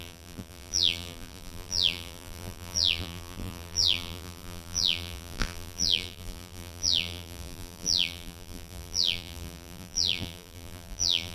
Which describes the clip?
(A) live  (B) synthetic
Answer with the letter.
B